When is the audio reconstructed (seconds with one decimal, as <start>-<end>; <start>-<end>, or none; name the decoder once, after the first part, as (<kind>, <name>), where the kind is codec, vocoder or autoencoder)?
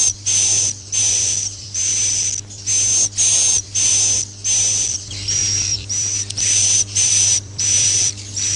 0.0-1.9 (vocoder, BigVGAN v2); 3.3-3.9; 4.9-8.6